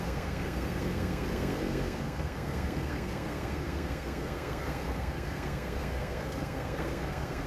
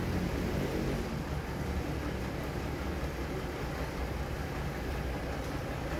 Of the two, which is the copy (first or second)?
first